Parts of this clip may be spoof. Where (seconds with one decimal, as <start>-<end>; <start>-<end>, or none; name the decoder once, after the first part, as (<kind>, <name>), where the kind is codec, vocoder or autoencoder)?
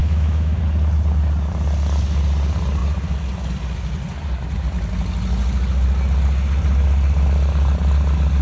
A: 0.0-0.6 (autoencoder, DAC-VAE)